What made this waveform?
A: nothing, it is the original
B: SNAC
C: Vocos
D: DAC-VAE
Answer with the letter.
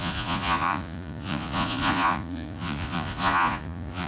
C